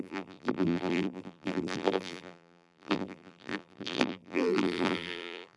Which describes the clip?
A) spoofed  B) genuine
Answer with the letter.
A